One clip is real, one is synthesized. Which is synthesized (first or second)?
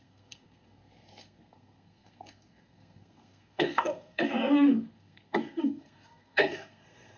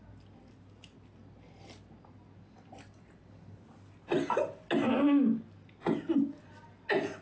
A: first